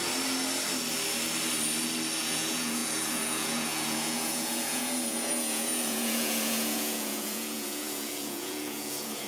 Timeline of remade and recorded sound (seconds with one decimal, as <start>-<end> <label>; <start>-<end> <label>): 0.0-2.2 recorded; 2.2-9.3 remade